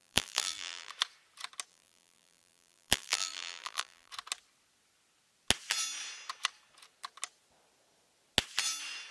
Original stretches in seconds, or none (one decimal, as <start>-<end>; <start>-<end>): 0.9-1.7; 4.1-9.1